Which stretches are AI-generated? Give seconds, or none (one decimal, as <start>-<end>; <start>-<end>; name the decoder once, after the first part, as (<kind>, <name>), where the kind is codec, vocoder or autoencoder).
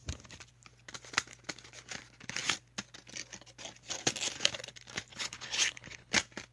5.1-6.1 (codec, HILCodec)